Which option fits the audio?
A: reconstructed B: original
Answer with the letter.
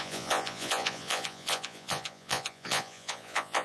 A